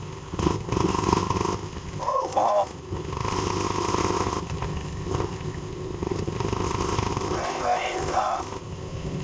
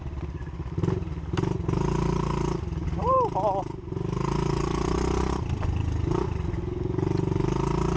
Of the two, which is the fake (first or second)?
first